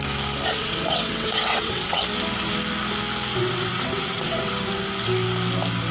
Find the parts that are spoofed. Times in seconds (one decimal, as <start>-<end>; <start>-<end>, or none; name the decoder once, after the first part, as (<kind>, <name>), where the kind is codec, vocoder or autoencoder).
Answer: 0.6-2.0 (vocoder, WaveNeXt); 3.4-4.5